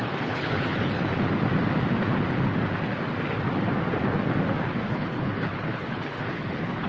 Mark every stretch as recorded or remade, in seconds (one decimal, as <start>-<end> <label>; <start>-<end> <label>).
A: 0.0-1.1 remade; 1.1-4.9 recorded; 4.9-6.9 remade